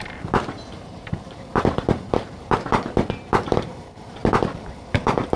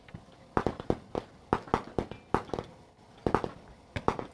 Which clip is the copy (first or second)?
first